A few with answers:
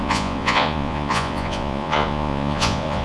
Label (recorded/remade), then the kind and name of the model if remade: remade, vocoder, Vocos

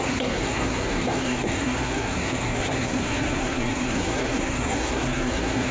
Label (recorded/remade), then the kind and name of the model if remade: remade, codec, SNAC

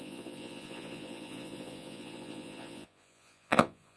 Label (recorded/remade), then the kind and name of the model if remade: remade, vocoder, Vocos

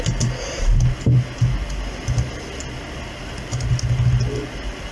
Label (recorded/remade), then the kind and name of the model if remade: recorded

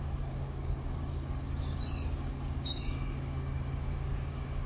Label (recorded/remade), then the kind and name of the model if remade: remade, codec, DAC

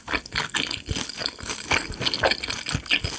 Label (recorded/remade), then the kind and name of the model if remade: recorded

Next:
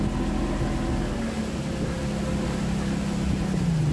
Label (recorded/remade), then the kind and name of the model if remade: recorded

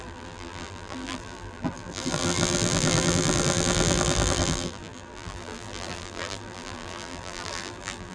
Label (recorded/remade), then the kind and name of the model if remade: remade, vocoder, BigVGAN v2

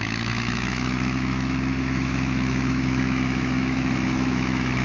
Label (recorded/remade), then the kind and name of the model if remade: remade, autoencoder, DAC-VAE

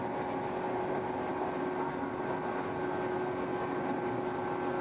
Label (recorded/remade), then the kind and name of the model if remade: recorded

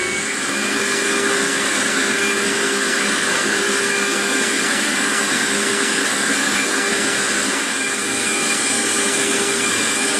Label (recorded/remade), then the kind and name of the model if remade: remade, codec, SNAC